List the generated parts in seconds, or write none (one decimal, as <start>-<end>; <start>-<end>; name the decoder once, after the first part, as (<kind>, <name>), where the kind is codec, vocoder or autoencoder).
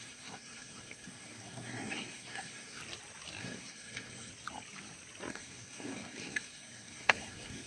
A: 0.0-2.8 (codec, SNAC); 3.4-4.3; 5.3-7.7